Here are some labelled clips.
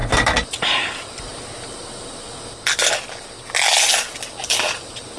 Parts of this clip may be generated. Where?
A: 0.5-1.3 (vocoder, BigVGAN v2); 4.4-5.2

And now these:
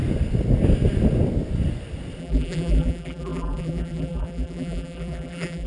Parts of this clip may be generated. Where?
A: 2.2-5.7 (vocoder, BigVGAN v2)

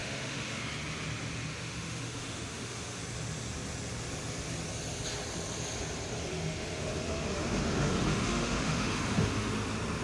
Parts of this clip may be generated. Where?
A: 0.0-0.6 (autoencoder, DAC-VAE); 1.5-3.0; 6.3-9.5

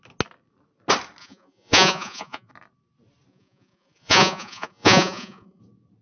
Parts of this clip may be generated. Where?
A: 1.2-2.5 (vocoder, Vocos); 3.3-5.6

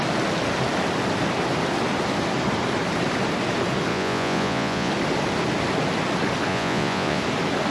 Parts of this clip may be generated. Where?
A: 3.9-4.9 (vocoder, Vocos); 6.5-7.2